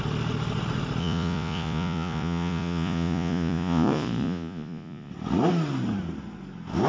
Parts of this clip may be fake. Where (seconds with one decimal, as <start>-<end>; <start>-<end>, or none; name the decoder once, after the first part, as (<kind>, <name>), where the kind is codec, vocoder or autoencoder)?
1.0-5.1 (vocoder, Vocos)